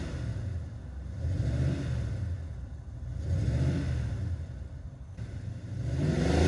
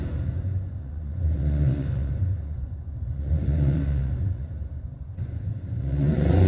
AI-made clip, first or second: second